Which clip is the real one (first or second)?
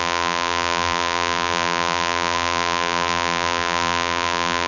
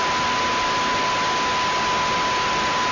second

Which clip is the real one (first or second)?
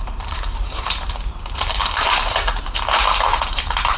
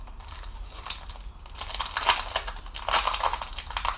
second